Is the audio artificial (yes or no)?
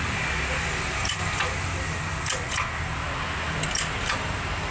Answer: no